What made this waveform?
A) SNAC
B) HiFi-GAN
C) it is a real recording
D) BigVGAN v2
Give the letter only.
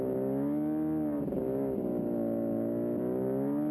C